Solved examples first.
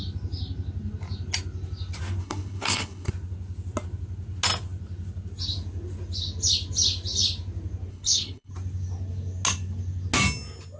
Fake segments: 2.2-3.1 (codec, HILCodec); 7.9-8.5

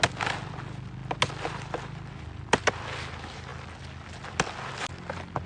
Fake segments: none

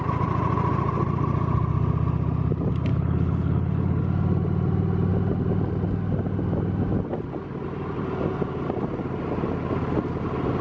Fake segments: 2.9-4.0 (codec, HILCodec)

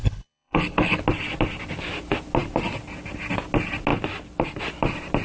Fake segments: 0.0-1.0 (codec, HILCodec)

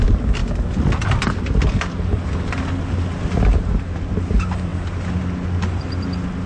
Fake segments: none

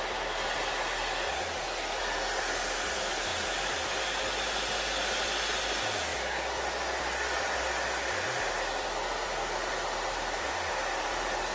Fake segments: none

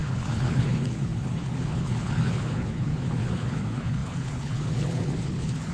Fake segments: 0.0-5.7 (codec, HILCodec)

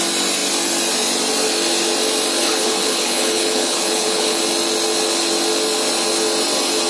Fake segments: 2.4-4.4 (codec, HILCodec)